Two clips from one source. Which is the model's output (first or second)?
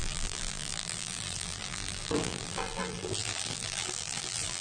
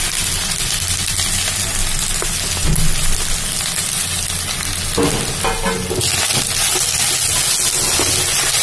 first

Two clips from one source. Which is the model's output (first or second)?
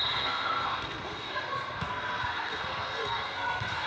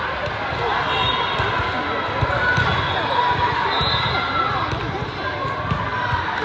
first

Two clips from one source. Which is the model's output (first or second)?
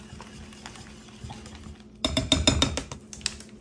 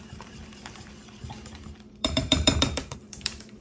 second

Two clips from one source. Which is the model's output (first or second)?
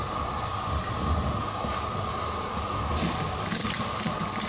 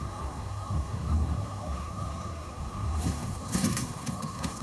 second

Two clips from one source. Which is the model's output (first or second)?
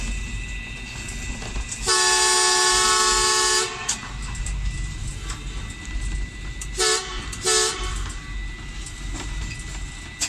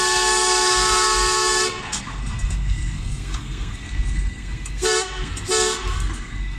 second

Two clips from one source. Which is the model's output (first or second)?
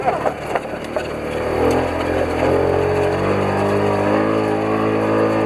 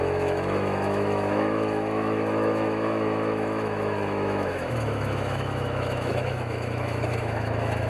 second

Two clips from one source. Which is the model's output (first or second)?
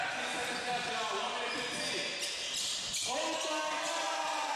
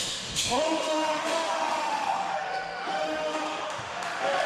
second